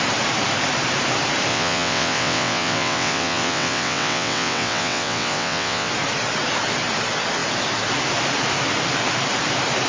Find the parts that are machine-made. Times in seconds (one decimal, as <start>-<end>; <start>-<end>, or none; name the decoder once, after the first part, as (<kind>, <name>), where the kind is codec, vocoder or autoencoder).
1.5-5.9 (vocoder, WaveNeXt)